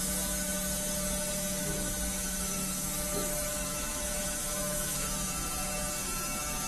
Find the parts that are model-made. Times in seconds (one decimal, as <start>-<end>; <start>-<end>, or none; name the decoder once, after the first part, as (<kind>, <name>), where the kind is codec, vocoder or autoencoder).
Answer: 1.6-5.0 (autoencoder, DAC-VAE)